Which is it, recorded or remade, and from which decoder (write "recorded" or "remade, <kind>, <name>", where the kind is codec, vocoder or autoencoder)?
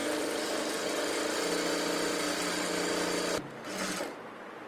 recorded